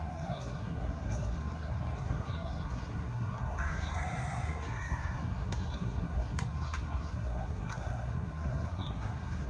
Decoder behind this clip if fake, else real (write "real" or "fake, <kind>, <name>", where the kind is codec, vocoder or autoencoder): fake, codec, SNAC